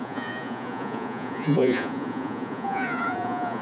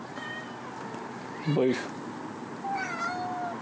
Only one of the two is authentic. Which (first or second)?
second